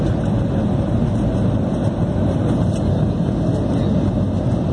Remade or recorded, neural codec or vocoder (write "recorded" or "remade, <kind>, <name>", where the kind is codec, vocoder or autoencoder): recorded